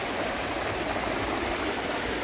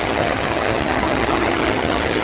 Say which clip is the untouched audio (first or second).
first